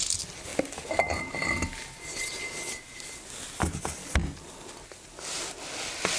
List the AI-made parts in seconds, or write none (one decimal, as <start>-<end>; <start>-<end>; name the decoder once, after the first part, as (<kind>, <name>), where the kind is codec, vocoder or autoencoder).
none